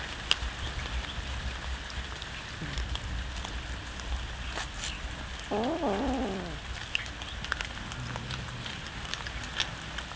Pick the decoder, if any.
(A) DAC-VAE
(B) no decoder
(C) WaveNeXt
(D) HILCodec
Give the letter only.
B